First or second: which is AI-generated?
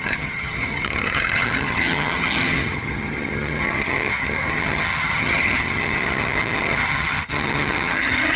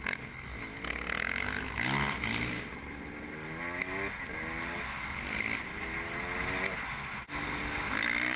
first